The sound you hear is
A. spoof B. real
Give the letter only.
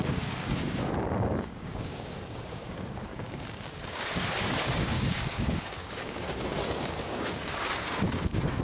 A